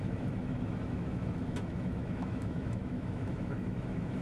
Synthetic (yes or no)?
yes